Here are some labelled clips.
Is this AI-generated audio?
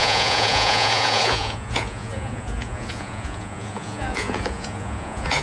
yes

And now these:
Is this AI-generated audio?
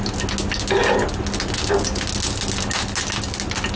no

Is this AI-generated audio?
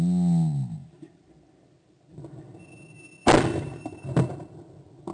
no